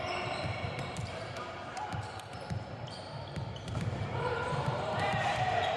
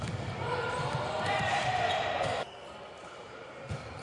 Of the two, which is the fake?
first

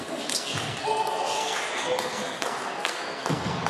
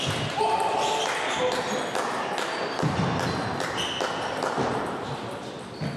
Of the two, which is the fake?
first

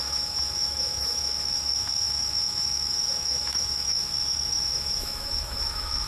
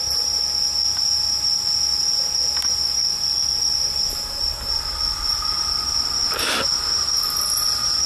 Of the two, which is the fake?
first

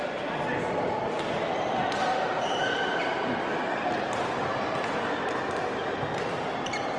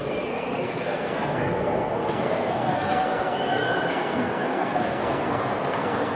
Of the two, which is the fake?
second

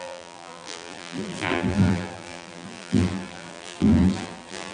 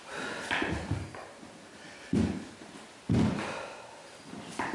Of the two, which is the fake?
first